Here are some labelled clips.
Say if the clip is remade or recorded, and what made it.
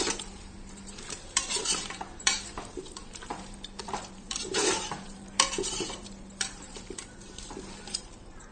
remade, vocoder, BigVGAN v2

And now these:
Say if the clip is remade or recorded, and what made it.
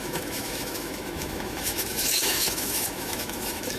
remade, autoencoder, DAC-VAE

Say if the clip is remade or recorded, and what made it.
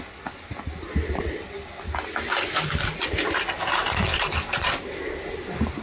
recorded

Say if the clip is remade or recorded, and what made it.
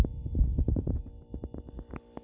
recorded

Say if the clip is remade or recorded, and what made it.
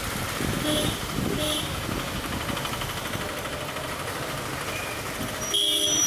recorded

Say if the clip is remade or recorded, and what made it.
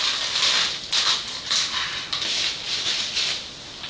recorded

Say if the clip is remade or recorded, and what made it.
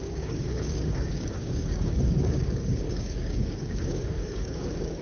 remade, codec, DAC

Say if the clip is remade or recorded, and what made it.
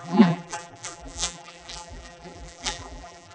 remade, vocoder, BigVGAN v2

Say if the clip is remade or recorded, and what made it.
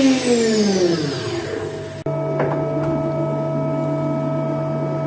recorded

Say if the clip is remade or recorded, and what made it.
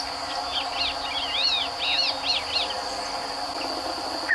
recorded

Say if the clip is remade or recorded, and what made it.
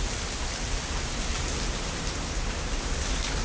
recorded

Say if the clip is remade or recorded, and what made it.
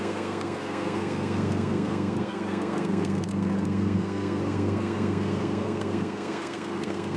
remade, codec, SNAC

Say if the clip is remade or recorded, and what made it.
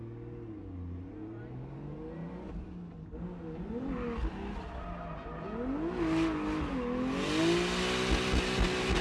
recorded